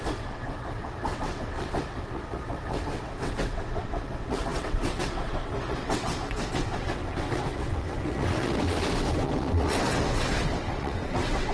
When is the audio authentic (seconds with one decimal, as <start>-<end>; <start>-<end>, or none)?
none